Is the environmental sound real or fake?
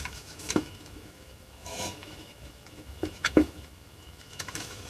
fake